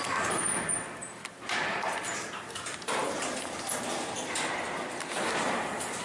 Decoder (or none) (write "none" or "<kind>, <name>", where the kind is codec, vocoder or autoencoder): vocoder, BigVGAN v2